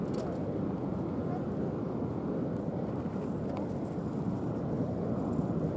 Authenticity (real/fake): real